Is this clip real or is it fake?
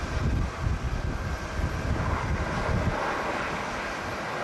real